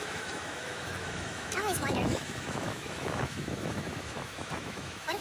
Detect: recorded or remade remade